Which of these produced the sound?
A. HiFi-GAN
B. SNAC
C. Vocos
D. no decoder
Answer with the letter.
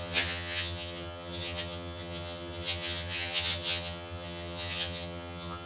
A